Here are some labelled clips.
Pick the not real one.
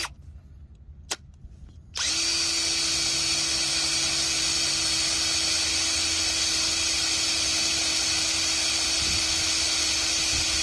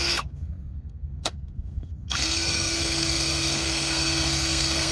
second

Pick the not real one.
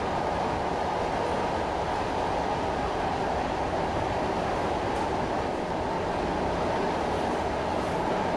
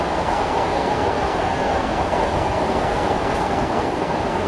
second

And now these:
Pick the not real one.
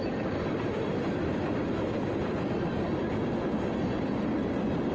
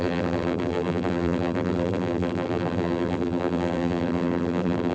second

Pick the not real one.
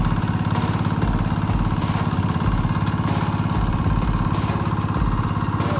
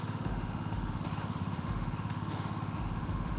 second